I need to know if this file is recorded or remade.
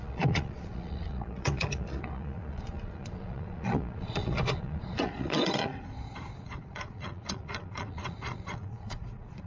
remade